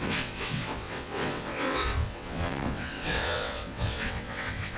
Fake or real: fake